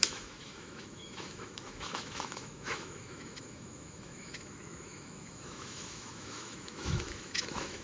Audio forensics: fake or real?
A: fake